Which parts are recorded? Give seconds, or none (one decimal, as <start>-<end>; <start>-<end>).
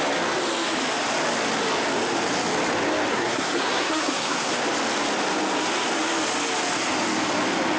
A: 0.0-3.1; 4.5-7.8